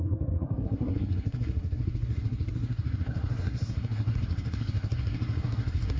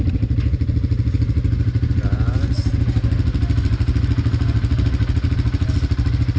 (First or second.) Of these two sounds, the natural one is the second